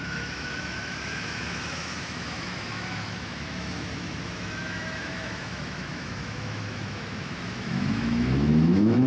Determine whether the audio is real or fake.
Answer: fake